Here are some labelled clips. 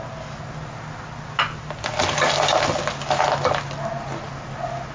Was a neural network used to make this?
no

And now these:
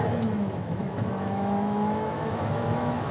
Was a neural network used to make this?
yes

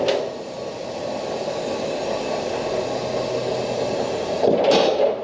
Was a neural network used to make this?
no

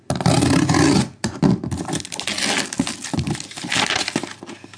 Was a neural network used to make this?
no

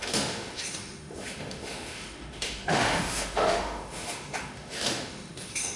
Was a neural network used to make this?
yes